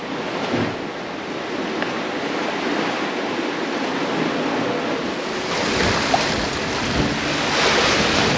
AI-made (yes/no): no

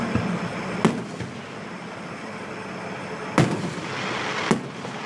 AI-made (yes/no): no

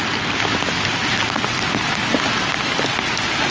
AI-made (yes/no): no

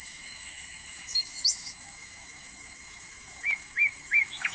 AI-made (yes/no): yes